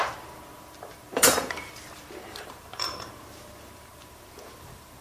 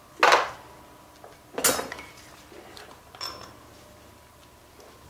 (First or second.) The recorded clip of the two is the second